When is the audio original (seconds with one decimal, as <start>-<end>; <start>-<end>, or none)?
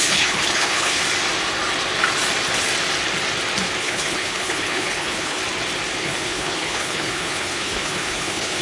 1.0-3.8; 5.4-6.0